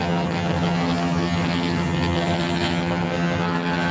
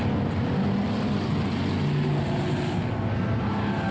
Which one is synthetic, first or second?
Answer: first